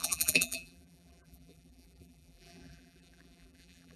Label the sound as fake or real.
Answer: fake